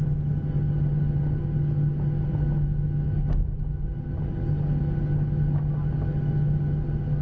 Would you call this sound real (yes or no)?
yes